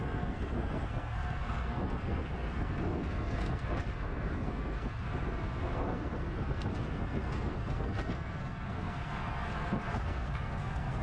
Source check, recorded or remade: remade